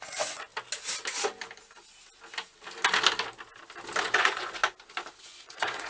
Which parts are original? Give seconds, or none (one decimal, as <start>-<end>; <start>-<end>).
0.5-4.0; 4.6-5.2